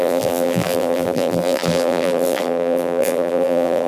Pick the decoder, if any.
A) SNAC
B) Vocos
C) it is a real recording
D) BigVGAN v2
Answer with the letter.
D